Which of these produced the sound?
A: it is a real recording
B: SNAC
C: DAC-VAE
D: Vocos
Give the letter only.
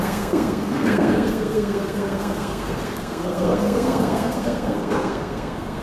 B